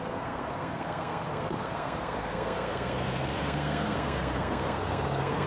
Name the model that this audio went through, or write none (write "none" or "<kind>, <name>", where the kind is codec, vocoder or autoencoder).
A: codec, SNAC